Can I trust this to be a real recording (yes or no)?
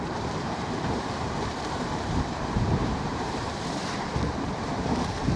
no